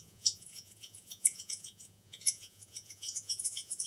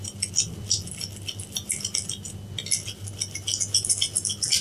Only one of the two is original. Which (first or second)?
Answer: second